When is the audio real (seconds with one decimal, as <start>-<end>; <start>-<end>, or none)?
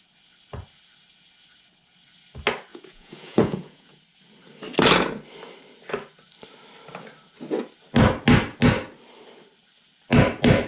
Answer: 0.0-2.7; 4.0-10.7